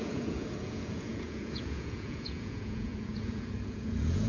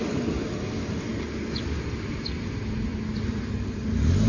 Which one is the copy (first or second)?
first